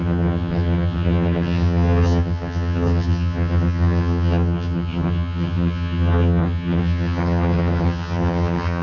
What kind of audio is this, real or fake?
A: fake